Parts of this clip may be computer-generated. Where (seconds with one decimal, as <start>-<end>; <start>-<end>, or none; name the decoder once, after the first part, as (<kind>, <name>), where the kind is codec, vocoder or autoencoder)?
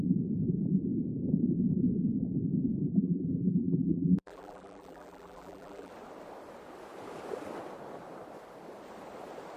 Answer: 2.9-5.9 (vocoder, BigVGAN v2)